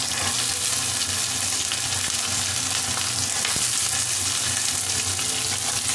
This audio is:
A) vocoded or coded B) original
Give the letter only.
B